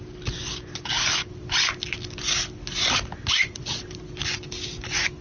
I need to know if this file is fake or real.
real